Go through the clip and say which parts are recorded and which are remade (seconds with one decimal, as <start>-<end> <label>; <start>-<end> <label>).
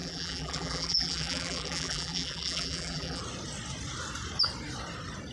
0.0-3.2 remade; 3.2-5.3 recorded